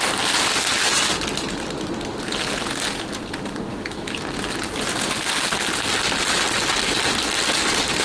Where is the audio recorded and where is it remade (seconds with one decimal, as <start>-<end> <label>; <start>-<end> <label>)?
0.0-3.7 recorded; 3.7-4.2 remade; 4.2-8.0 recorded